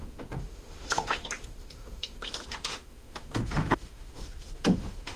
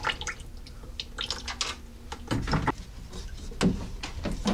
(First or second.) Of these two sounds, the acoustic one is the second